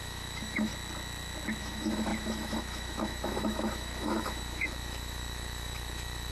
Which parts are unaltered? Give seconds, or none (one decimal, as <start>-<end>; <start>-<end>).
0.7-1.6